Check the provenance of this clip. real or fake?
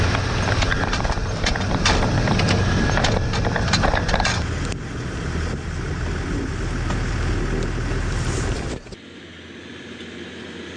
real